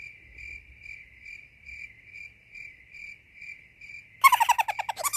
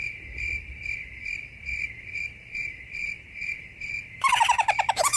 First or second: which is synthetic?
second